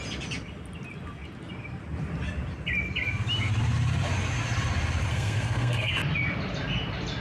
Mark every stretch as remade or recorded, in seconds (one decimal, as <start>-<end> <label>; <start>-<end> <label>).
0.0-5.1 recorded; 5.1-5.9 remade; 5.9-7.2 recorded